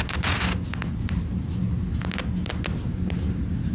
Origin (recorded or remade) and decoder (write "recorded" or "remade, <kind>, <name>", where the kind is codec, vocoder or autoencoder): recorded